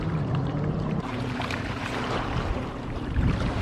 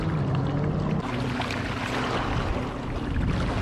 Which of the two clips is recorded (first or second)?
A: second